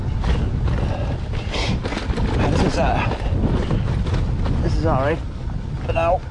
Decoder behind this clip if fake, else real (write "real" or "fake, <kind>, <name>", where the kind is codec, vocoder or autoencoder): real